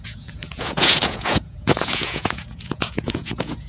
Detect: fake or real fake